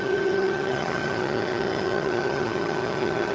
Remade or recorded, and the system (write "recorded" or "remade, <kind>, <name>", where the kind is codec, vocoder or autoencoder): remade, vocoder, HiFi-GAN